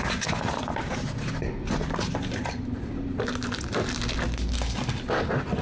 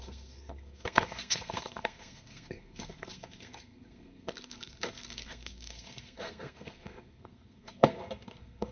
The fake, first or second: second